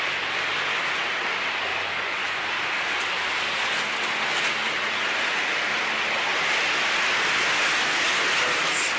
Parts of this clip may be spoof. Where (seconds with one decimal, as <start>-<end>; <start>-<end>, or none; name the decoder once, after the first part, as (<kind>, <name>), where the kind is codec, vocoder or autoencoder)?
1.7-2.4 (vocoder, Vocos)

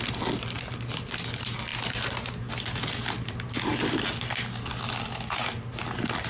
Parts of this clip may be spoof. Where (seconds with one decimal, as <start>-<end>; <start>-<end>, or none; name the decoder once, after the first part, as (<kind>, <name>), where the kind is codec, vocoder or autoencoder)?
none

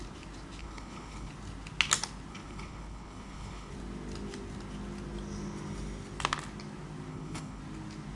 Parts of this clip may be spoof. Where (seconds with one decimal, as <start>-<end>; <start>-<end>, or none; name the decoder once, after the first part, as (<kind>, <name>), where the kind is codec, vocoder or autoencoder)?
0.6-1.3 (codec, HILCodec); 2.3-3.7; 7.1-7.6

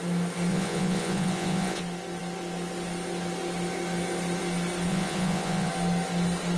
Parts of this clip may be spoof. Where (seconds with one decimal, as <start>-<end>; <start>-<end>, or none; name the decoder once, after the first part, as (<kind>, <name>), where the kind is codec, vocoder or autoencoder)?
0.5-1.8 (vocoder, Vocos); 4.9-5.7

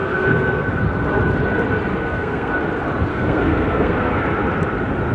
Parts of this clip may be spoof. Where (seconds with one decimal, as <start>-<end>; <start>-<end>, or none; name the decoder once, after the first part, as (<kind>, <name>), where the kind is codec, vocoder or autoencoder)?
0.0-0.8 (codec, SNAC); 1.9-2.5; 3.1-4.2

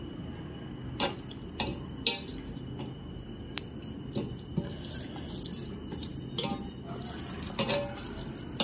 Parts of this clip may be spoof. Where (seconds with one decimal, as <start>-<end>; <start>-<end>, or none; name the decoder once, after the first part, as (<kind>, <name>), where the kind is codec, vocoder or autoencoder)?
none

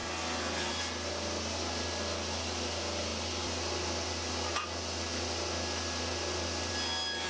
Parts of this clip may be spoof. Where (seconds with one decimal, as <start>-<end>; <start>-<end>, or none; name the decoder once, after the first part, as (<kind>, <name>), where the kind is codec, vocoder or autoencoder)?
none